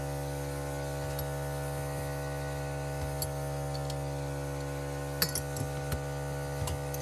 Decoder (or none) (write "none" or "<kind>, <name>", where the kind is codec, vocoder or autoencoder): none